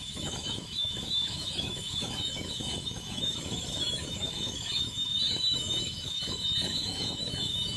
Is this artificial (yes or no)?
yes